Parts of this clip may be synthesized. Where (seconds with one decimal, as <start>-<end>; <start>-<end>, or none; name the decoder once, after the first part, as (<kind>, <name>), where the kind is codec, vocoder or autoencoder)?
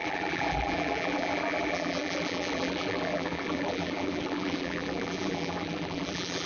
0.0-6.5 (vocoder, BigVGAN v2)